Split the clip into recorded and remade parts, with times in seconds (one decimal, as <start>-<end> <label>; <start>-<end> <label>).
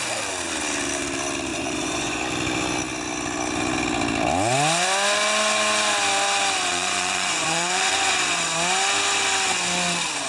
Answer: 0.0-1.5 recorded; 1.5-2.2 remade; 2.2-6.7 recorded; 6.7-8.1 remade; 8.1-10.3 recorded